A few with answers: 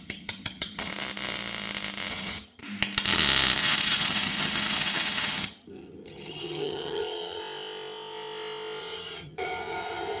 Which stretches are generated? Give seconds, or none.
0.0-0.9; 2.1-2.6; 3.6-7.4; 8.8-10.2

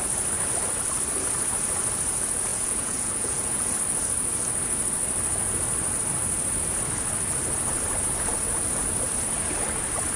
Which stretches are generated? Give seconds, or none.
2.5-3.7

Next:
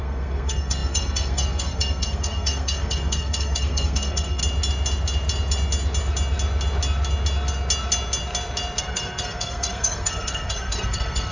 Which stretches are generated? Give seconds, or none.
0.0-4.4; 8.8-11.3

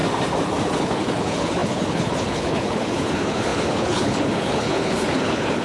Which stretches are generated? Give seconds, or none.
0.7-5.6

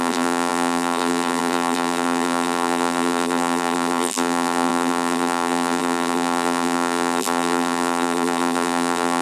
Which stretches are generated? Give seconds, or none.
0.0-9.2

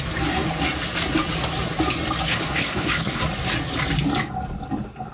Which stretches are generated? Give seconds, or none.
2.3-3.2